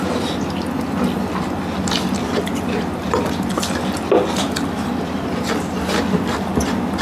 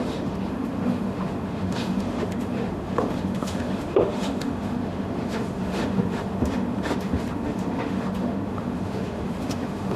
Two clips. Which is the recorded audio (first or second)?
first